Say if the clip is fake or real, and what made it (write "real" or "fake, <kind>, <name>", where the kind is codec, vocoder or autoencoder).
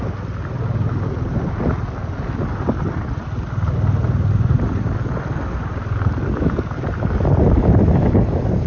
real